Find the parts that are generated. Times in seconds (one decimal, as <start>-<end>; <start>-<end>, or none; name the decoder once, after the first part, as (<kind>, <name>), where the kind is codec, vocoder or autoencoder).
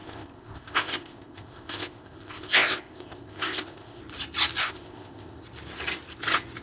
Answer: 0.0-4.0 (codec, ZipCodec); 4.6-5.4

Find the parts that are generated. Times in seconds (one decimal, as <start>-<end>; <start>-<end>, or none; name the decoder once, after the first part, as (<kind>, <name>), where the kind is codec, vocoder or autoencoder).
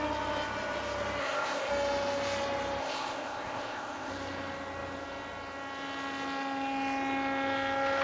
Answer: 1.2-1.7 (codec, ZipCodec); 2.8-4.1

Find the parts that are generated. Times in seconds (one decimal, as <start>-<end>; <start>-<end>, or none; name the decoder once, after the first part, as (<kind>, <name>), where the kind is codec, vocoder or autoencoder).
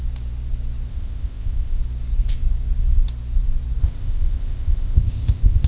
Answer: 0.9-1.8 (codec, ZipCodec); 3.8-5.7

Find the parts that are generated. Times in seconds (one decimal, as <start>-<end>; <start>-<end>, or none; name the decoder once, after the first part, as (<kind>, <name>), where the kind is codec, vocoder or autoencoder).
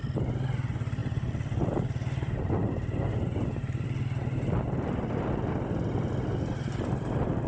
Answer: none